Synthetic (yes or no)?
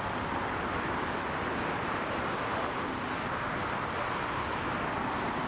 no